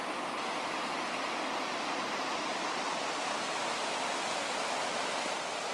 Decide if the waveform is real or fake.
real